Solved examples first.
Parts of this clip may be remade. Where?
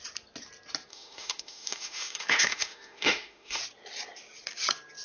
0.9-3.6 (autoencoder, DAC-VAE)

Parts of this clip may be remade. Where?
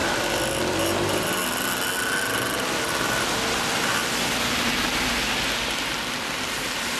none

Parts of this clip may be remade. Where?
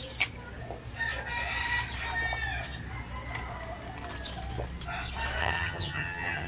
5.4-6.5 (vocoder, HiFi-GAN)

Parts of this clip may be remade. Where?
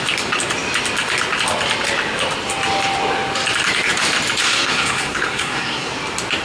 4.4-5.9 (codec, SNAC)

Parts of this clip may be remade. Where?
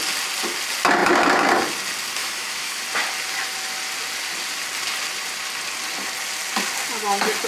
2.2-2.8 (autoencoder, DAC-VAE)